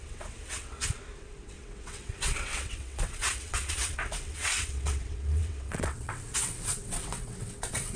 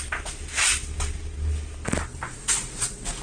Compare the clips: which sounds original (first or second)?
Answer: second